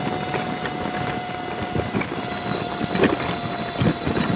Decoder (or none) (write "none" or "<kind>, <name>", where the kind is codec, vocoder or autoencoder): none